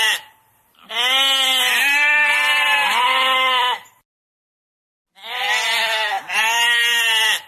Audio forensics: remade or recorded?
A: recorded